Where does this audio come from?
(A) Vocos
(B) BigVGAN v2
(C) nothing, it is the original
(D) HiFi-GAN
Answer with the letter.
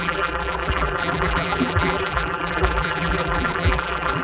B